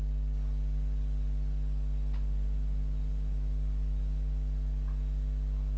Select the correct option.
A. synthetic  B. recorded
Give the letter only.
B